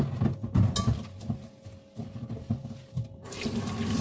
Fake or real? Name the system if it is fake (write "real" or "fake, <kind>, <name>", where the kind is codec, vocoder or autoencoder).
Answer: real